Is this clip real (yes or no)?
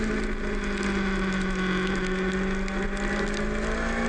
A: yes